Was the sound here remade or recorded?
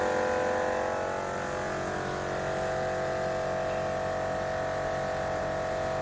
recorded